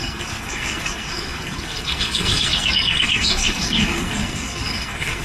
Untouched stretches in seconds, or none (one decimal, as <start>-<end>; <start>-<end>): none